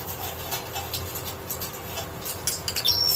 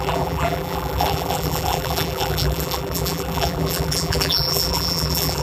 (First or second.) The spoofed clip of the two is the second